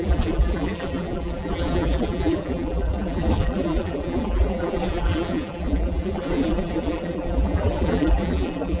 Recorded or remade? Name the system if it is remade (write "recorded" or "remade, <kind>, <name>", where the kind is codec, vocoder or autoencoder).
remade, vocoder, BigVGAN v2